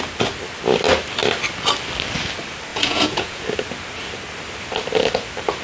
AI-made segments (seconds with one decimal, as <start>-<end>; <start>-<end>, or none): 2.7-3.4